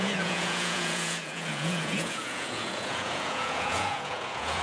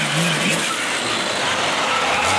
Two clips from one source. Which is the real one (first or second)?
second